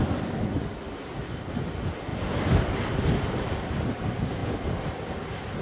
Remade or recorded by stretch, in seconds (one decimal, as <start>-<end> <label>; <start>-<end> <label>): 0.0-5.6 recorded